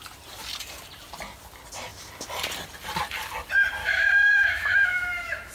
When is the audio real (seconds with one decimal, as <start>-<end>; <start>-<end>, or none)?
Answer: 0.0-3.8